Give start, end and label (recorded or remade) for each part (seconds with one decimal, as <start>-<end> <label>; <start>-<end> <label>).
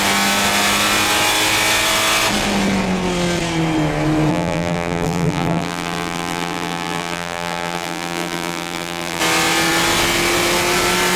0.0-4.3 recorded; 4.3-9.2 remade; 9.2-11.2 recorded